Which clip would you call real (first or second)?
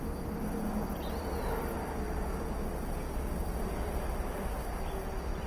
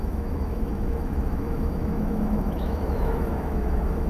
first